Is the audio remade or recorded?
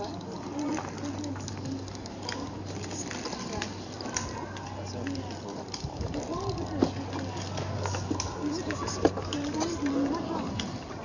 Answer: recorded